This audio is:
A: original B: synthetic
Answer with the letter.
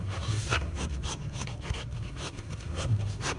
B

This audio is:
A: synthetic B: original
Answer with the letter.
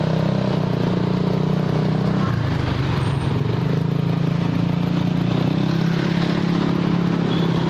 B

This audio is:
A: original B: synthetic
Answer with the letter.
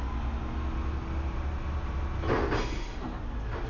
A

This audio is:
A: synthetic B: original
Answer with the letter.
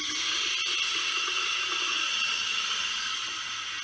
B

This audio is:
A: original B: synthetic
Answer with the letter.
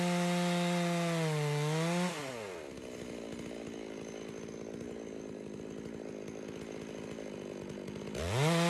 A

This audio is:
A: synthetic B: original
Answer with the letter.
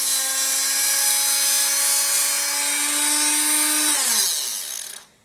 B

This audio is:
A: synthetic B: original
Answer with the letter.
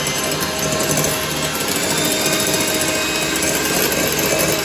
B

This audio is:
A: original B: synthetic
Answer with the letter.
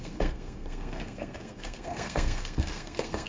B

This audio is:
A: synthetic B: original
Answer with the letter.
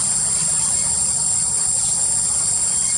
B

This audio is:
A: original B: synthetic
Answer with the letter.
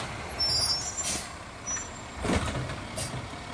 A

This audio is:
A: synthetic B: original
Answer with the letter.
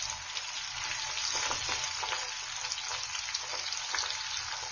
B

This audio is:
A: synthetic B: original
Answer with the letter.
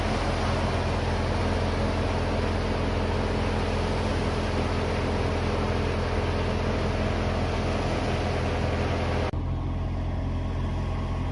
B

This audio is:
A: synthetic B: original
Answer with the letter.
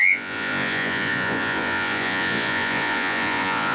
A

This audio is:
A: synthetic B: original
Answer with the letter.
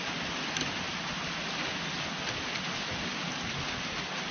B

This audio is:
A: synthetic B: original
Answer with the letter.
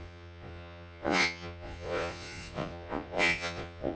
A